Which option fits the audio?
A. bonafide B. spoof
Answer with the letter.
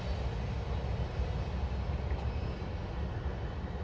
A